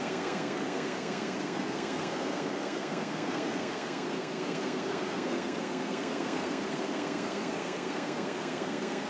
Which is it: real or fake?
fake